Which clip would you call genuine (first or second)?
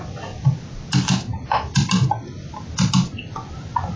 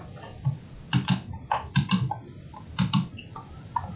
first